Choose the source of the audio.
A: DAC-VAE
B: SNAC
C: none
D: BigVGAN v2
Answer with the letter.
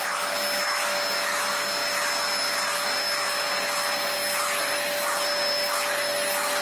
C